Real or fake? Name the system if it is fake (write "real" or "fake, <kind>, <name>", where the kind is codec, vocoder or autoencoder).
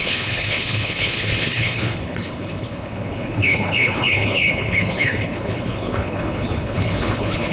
fake, codec, HILCodec